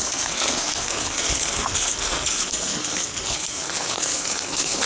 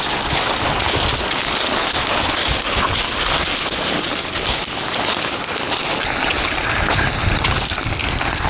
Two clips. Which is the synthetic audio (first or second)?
first